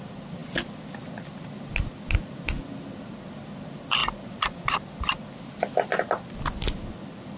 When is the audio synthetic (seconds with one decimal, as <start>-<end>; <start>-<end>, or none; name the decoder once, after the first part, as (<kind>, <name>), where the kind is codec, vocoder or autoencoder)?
none